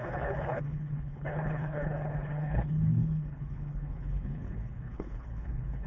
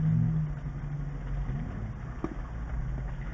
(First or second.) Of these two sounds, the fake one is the first